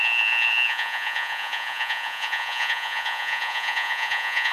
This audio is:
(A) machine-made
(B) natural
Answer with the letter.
A